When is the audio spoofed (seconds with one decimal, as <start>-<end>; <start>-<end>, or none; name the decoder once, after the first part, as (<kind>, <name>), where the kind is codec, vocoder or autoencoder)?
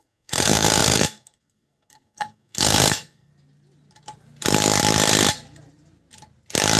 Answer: 0.0-3.3 (codec, SNAC)